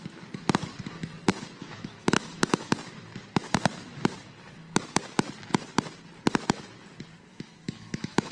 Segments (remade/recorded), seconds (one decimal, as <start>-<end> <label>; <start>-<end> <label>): 0.0-1.6 recorded; 1.6-2.7 remade; 2.7-7.3 recorded; 7.3-8.3 remade